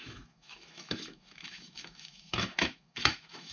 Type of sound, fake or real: fake